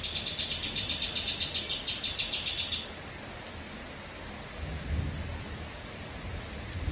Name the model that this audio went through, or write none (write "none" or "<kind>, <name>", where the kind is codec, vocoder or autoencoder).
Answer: none